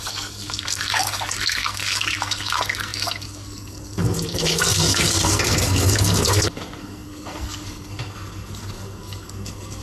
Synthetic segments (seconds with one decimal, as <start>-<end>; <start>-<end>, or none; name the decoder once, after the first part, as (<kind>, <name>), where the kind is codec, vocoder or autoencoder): 0.0-9.8 (codec, SNAC)

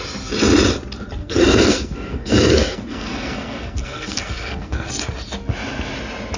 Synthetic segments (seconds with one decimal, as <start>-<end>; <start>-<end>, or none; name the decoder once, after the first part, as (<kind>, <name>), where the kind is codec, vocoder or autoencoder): 1.2-4.9 (codec, SNAC)

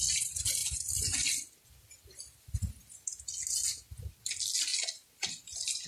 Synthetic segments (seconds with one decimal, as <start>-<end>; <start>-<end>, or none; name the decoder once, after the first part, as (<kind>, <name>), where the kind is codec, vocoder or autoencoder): none

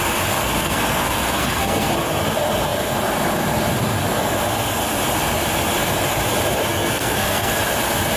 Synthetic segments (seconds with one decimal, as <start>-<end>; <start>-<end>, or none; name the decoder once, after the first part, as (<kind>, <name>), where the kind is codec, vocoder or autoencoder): 0.4-1.9 (codec, SNAC); 6.7-7.6

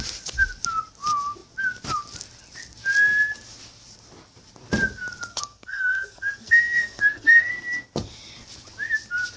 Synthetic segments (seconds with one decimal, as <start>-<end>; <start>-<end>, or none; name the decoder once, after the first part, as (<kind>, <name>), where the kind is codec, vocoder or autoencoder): 5.3-7.5 (codec, SNAC)

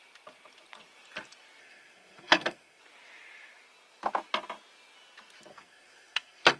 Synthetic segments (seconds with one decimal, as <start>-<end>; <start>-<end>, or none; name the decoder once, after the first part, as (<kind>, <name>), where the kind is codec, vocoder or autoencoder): 1.6-2.8 (codec, SNAC); 5.5-6.6